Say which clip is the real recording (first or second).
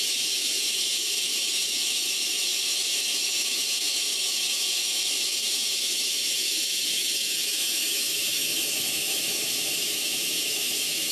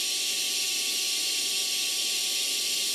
second